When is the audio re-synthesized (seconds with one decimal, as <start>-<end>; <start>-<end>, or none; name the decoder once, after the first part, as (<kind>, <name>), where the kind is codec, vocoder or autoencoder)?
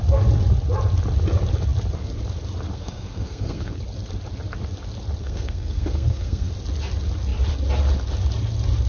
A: 2.7-3.8 (codec, SNAC); 5.2-6.5